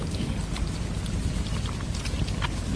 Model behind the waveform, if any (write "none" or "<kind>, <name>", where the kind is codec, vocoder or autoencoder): none